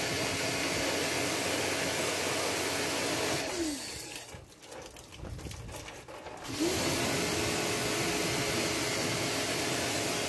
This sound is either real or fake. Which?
real